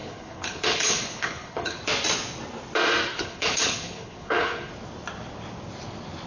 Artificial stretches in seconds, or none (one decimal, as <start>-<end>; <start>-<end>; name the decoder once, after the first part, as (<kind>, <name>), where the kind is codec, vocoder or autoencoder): 0.0-1.8 (codec, HILCodec); 3.1-4.7